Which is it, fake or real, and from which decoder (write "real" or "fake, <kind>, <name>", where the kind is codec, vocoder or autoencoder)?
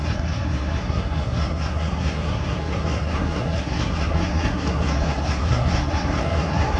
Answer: fake, codec, SNAC